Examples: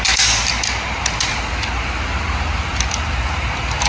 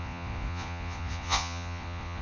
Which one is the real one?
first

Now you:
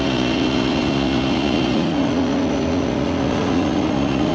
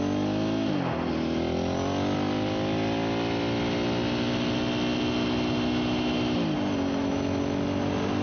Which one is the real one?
second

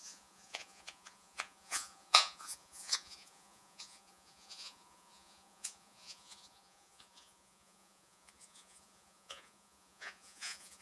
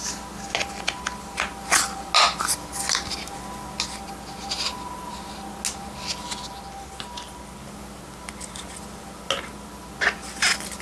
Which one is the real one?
second